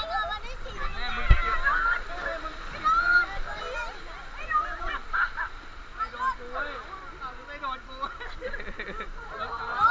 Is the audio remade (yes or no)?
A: no